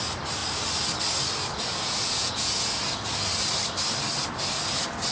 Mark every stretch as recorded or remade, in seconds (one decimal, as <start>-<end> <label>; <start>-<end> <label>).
0.0-1.5 recorded; 1.5-2.8 remade; 2.8-5.1 recorded